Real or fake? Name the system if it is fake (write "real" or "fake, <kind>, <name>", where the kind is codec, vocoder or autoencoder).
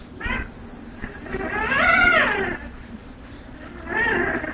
real